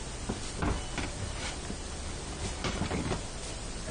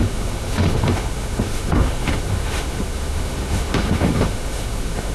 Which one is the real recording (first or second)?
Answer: first